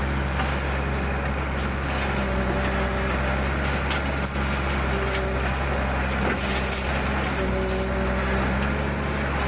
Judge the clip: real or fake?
real